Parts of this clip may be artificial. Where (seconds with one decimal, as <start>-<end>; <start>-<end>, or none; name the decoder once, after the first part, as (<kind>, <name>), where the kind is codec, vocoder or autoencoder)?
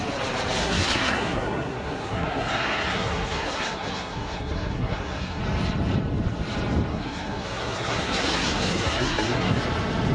0.6-5.4 (codec, SNAC); 6.9-9.6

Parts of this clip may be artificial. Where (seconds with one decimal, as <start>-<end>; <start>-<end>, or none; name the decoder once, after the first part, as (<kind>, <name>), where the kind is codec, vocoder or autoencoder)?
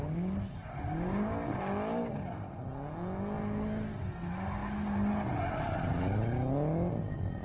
none